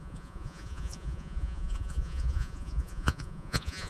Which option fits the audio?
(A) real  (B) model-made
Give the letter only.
B